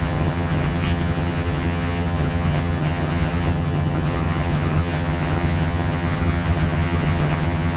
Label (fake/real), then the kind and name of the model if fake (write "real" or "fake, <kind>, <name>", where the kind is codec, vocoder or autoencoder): fake, vocoder, HiFi-GAN